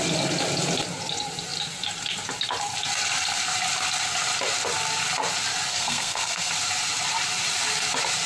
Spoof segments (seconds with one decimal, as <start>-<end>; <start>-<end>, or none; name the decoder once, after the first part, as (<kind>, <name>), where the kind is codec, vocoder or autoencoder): 5.7-6.5 (codec, SNAC)